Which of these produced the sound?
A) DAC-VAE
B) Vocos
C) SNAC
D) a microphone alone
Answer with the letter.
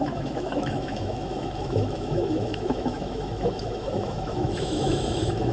A